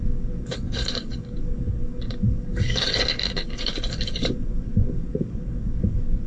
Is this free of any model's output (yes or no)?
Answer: no